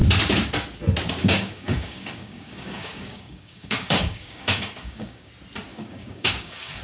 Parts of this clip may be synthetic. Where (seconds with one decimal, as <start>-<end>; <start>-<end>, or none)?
1.2-5.3; 5.7-6.8